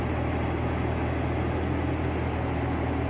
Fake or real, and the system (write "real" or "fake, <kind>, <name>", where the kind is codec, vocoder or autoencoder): real